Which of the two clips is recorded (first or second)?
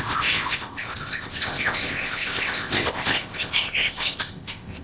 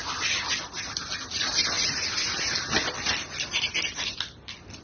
second